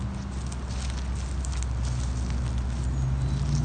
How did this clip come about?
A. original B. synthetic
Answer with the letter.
A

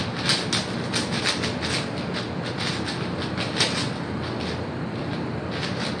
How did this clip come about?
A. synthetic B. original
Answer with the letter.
B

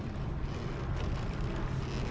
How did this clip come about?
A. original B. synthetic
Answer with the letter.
A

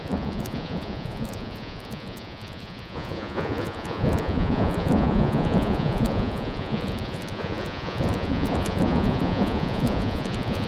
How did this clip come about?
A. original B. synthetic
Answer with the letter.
B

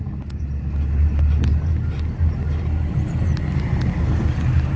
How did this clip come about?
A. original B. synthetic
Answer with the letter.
A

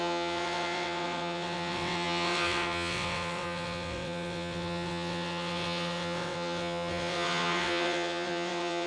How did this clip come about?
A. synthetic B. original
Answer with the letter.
A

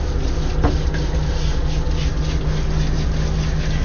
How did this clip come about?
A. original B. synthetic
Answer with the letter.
A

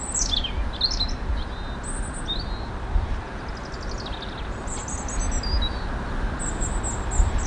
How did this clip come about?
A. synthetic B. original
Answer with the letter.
B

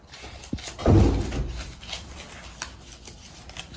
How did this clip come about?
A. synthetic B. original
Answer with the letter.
B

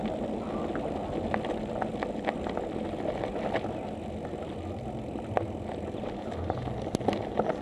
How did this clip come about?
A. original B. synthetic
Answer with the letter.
A